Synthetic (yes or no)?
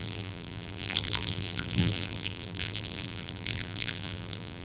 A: yes